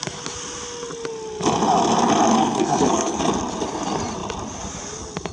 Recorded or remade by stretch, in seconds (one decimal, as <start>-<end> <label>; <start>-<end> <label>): 0.0-2.3 recorded; 2.3-3.2 remade; 3.2-5.3 recorded